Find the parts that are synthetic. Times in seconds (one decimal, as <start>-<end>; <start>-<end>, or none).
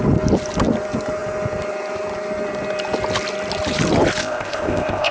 4.2-5.1